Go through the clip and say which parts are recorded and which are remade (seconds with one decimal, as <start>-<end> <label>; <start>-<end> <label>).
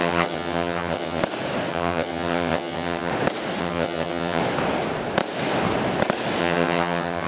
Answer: 0.0-1.2 remade; 1.2-1.7 recorded; 1.7-3.1 remade; 3.1-3.6 recorded; 3.6-4.4 remade; 4.4-6.4 recorded; 6.4-7.3 remade